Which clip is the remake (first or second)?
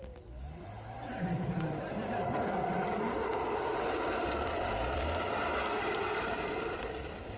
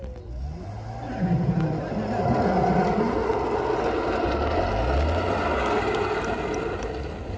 first